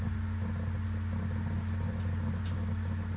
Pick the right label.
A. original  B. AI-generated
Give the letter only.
A